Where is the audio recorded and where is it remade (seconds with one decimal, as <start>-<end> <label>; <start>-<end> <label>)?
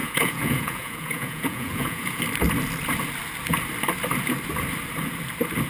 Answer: 0.0-2.2 remade; 2.2-5.7 recorded